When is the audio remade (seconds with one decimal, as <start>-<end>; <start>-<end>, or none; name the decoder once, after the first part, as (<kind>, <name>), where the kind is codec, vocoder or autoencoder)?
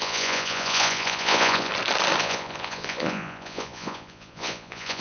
0.0-1.7 (vocoder, Vocos); 2.2-5.0